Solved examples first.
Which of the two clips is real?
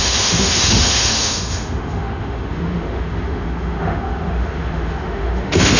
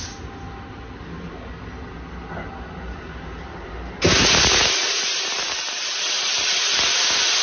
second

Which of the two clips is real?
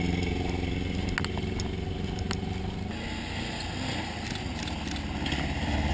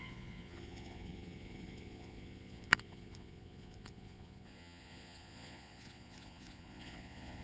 first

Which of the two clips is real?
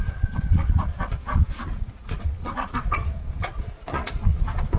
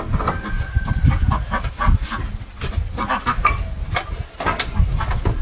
second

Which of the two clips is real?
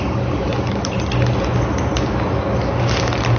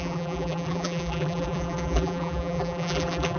first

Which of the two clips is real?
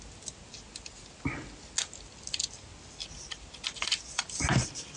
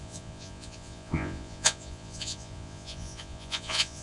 first